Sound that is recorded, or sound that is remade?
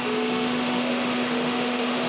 remade